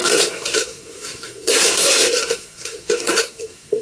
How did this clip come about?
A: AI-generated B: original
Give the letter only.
A